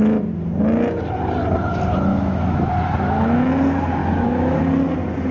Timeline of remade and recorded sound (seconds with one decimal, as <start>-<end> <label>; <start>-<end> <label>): 0.0-2.1 recorded; 2.1-2.7 remade; 2.7-4.0 recorded; 4.0-4.6 remade; 4.6-5.3 recorded